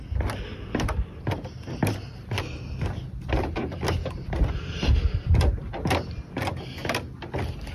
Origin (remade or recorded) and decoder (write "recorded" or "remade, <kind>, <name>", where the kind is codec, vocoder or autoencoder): recorded